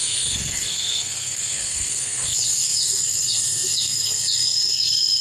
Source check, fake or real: fake